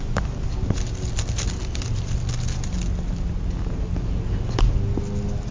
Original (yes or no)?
yes